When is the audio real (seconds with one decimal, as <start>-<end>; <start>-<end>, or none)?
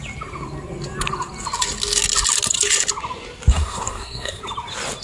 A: 0.0-3.5; 4.4-5.0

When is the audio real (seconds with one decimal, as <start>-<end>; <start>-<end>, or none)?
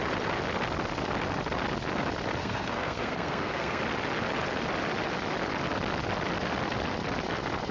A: 0.0-2.4; 3.8-7.7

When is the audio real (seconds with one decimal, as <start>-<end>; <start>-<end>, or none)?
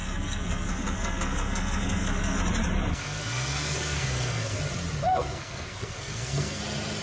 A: 2.4-2.9; 4.6-5.0; 6.6-7.0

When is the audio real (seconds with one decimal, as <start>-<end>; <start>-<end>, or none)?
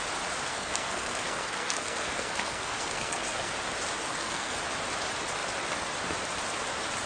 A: 0.0-0.5; 3.5-4.1; 4.6-7.1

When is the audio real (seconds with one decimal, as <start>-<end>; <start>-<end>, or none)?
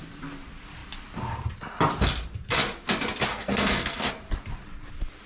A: 0.0-3.3; 4.1-5.3